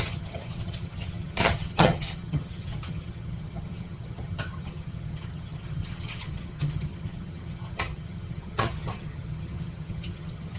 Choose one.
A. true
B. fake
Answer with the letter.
B